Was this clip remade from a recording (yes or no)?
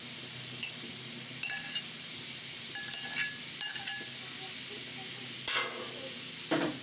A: no